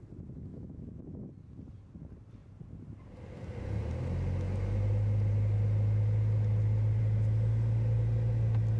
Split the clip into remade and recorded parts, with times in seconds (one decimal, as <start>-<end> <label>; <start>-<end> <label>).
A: 0.0-0.5 recorded; 0.5-1.3 remade; 1.3-8.8 recorded